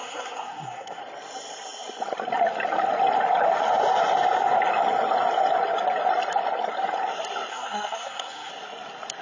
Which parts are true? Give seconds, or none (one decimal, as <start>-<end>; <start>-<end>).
1.0-7.5; 8.5-9.2